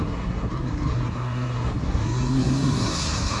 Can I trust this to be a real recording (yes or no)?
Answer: no